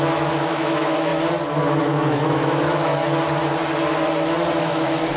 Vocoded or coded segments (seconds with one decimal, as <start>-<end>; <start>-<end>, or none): 0.0-1.1; 1.8-2.9; 4.6-5.2